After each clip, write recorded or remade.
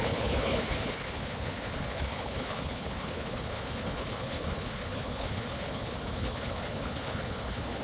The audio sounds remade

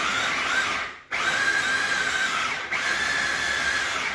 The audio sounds recorded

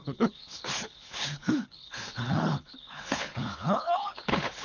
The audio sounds remade